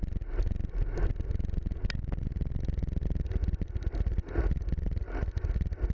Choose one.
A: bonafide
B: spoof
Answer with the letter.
A